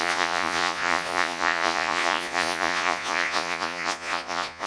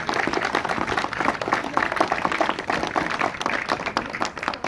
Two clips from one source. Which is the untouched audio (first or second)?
second